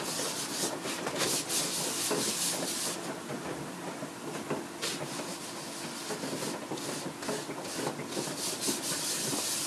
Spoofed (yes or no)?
no